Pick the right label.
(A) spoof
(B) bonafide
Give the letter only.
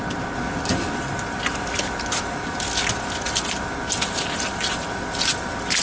B